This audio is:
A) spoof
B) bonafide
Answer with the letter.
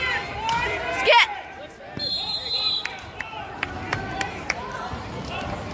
A